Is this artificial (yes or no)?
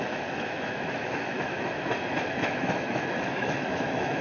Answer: yes